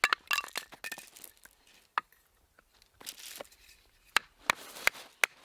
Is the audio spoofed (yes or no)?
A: no